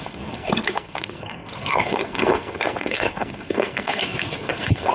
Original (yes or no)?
no